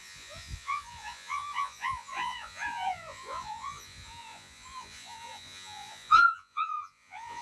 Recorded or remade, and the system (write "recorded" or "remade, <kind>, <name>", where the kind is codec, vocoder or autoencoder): remade, vocoder, Vocos